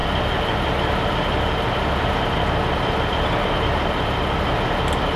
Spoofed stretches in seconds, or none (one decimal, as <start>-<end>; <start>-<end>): none